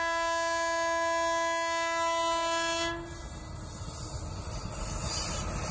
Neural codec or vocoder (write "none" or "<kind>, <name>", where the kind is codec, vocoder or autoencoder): none